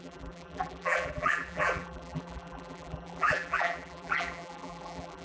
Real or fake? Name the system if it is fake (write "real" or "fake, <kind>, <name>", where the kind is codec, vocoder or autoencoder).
fake, vocoder, BigVGAN v2